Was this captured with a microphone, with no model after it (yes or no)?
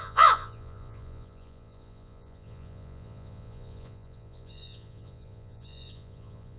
no